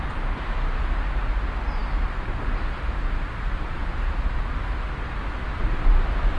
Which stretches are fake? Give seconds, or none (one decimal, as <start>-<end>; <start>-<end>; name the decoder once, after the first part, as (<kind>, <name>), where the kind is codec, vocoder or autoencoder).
none